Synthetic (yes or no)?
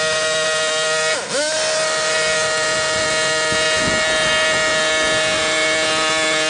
no